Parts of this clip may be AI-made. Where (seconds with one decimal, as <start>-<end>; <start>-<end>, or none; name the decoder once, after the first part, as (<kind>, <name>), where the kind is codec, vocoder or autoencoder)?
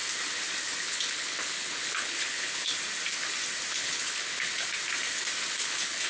0.8-2.7 (codec, HILCodec); 3.7-4.5; 5.5-6.1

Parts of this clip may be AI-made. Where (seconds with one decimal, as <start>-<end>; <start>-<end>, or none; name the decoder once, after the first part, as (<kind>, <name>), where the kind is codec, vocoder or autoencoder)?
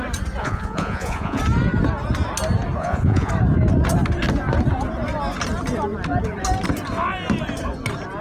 0.4-1.4 (vocoder, Vocos); 2.8-3.3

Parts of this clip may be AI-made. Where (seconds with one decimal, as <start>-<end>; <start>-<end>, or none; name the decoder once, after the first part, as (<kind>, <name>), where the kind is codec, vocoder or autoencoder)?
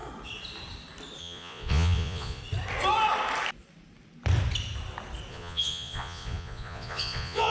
1.2-2.4 (vocoder, Vocos); 5.3-7.5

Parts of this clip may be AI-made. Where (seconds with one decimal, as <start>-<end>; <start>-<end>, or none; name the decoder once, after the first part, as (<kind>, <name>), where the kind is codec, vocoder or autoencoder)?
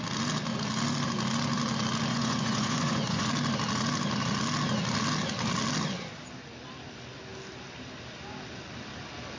2.1-3.3 (vocoder, Vocos)